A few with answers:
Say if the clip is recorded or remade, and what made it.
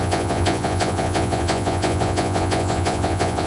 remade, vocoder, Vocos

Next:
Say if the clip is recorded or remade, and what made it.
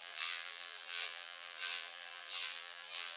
remade, vocoder, BigVGAN v2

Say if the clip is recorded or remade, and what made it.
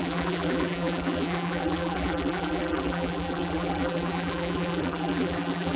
remade, vocoder, BigVGAN v2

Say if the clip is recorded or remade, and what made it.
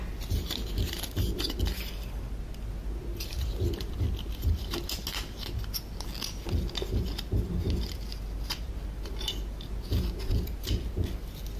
recorded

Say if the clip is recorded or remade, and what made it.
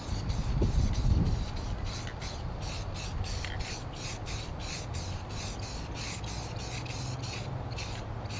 recorded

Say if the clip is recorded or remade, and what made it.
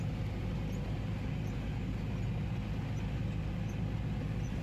recorded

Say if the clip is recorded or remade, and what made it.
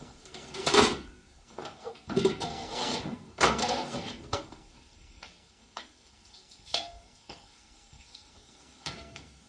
remade, codec, SNAC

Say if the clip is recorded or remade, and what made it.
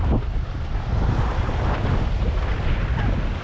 recorded